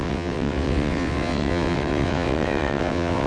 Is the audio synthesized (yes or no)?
yes